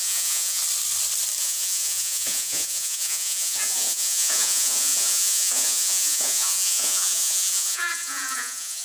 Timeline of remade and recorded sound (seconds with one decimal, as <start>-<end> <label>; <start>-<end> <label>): 0.0-0.6 remade; 0.6-1.4 recorded; 1.4-8.8 remade